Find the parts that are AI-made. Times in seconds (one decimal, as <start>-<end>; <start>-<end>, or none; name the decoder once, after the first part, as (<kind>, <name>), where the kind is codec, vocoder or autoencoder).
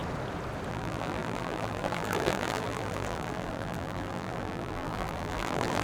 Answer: 0.7-5.8 (vocoder, BigVGAN v2)